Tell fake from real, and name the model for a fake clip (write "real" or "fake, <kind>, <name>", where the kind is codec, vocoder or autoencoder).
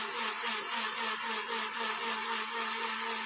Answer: real